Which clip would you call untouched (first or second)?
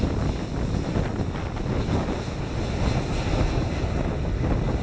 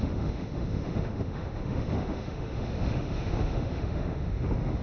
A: first